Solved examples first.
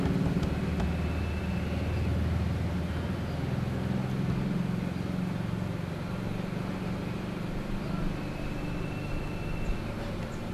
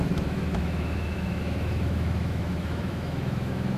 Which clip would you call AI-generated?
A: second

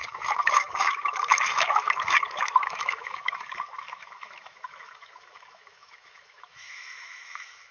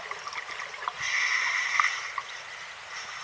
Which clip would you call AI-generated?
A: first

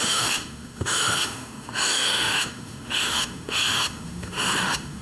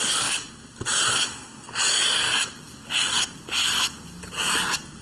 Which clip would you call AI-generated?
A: first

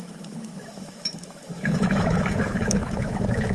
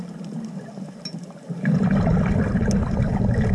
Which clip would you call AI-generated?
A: first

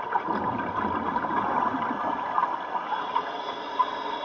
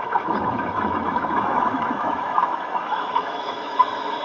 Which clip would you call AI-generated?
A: second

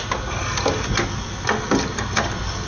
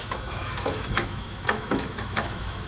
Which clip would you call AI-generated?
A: second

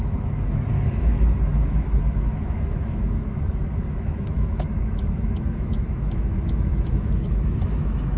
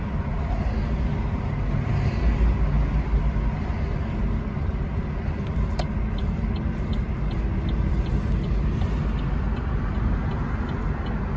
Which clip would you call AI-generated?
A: first